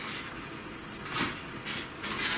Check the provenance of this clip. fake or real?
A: real